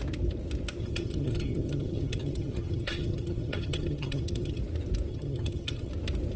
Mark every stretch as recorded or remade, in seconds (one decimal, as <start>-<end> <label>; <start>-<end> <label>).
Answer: 0.0-0.8 recorded; 0.8-4.6 remade; 4.6-5.1 recorded; 5.1-5.9 remade; 5.9-6.4 recorded